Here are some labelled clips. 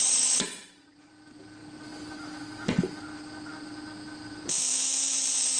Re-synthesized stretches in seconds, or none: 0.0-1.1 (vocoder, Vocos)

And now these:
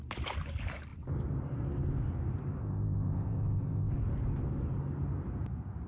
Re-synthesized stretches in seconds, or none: 2.6-3.9 (codec, ZipCodec)

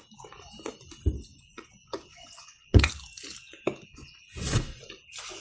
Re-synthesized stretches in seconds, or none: 1.3-2.9 (vocoder, Vocos); 3.9-4.8